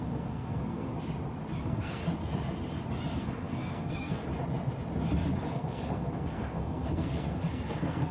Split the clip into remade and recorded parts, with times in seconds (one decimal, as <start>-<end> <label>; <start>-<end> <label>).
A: 0.0-0.9 remade; 0.9-1.6 recorded; 1.6-2.0 remade; 2.0-3.2 recorded; 3.2-4.2 remade; 4.2-5.5 recorded; 5.5-8.1 remade